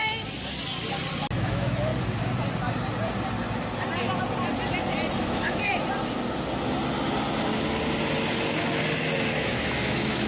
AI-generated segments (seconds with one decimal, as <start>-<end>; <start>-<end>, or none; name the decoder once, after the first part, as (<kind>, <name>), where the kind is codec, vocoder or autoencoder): 1.4-1.9 (autoencoder, DAC-VAE); 5.2-5.7; 9.4-10.3

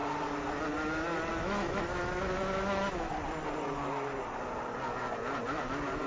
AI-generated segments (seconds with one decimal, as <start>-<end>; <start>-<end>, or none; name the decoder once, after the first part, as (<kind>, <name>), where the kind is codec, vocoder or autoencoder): 1.3-3.1 (autoencoder, DAC-VAE)